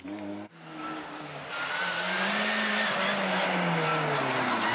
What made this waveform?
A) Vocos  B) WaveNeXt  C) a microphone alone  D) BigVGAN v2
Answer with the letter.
C